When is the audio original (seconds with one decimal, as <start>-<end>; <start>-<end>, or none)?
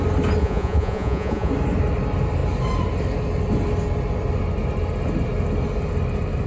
0.0-0.4; 1.5-6.5